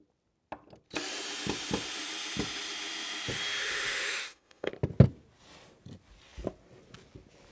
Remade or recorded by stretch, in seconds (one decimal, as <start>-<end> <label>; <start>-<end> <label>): 0.0-3.6 recorded; 3.6-4.7 remade; 4.7-7.5 recorded